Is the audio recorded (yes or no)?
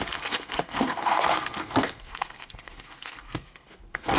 no